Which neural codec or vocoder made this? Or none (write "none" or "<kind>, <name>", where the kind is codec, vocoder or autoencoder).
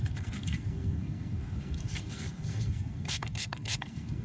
codec, SNAC